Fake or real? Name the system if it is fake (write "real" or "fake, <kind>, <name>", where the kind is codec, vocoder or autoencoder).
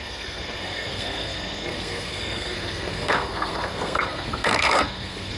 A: fake, codec, SNAC